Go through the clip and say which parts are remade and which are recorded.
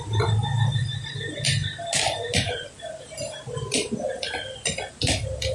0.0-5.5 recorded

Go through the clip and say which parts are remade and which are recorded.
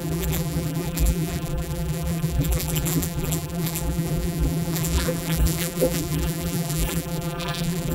0.0-7.9 remade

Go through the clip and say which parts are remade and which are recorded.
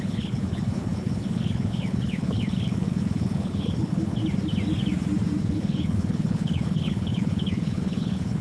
0.0-4.2 remade; 4.2-5.4 recorded; 5.4-8.4 remade